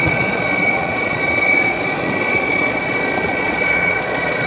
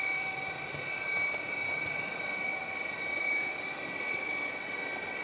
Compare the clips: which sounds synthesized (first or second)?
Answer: first